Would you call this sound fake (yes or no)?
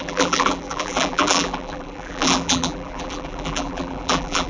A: yes